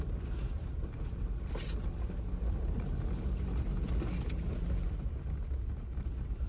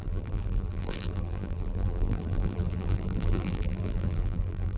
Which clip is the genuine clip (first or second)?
first